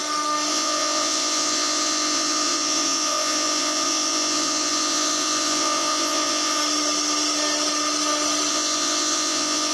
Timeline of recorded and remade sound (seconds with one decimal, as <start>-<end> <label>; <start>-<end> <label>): 0.0-0.5 recorded; 0.5-6.6 remade; 6.6-8.5 recorded; 8.5-9.7 remade